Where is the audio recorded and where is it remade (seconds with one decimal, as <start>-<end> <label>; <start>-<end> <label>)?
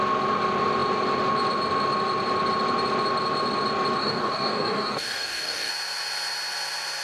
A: 0.0-4.0 recorded; 4.0-5.7 remade; 5.7-7.0 recorded